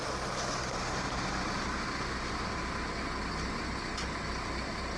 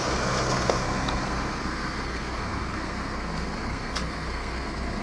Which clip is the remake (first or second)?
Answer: second